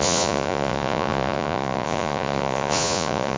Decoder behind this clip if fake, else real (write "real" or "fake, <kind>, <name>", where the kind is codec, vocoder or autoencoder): fake, vocoder, Vocos